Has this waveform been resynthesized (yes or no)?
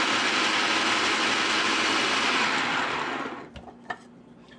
no